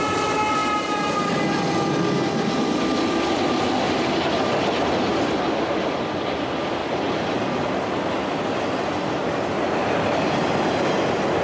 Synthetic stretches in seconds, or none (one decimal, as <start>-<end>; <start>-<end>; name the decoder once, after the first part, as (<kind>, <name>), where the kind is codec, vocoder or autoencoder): 6.8-7.6 (vocoder, BigVGAN v2); 9.8-10.4

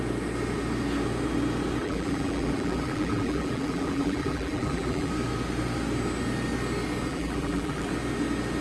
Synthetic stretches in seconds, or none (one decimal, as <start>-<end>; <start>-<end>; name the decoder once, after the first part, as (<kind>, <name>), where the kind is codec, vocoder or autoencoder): 1.8-5.1 (vocoder, BigVGAN v2); 7.1-7.9

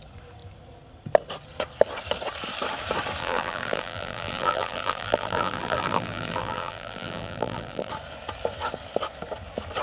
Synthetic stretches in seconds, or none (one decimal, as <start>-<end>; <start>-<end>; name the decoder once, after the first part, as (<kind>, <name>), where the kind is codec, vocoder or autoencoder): 3.2-7.9 (vocoder, BigVGAN v2)

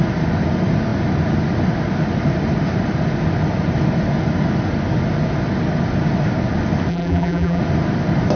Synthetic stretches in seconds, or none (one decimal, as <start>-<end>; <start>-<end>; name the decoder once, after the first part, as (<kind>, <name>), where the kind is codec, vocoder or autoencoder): 6.9-7.6 (vocoder, BigVGAN v2)

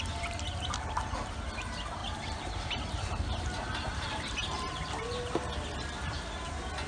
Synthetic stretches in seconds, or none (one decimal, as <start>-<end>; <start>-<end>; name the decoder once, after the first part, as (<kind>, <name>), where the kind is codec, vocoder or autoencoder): 2.0-3.3 (vocoder, BigVGAN v2); 3.9-5.4

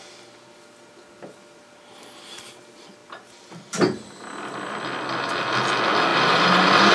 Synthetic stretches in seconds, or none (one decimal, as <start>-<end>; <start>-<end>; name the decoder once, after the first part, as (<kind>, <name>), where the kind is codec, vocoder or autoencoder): 3.0-4.8 (vocoder, BigVGAN v2); 6.1-6.9